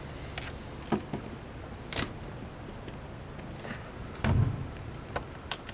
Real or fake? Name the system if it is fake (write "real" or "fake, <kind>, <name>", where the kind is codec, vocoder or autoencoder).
real